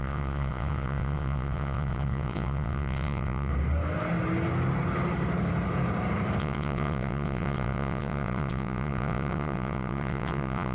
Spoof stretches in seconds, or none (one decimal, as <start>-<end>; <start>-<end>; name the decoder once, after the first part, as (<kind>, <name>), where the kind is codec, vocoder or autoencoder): 0.0-3.5 (vocoder, WaveNeXt); 6.4-10.7